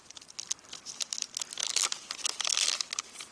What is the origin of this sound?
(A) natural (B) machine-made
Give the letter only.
A